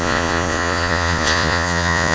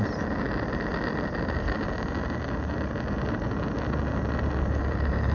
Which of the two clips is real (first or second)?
second